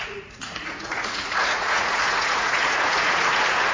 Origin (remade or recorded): remade